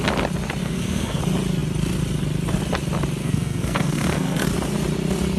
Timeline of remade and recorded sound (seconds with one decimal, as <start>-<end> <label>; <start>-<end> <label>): 0.0-0.6 recorded; 0.6-1.2 remade; 1.2-3.2 recorded; 3.2-4.5 remade; 4.5-5.4 recorded